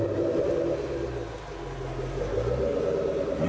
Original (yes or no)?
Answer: yes